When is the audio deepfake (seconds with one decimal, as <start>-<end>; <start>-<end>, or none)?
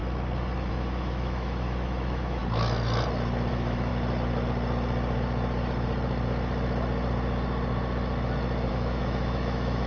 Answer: 0.7-2.4; 3.5-3.9; 8.7-9.9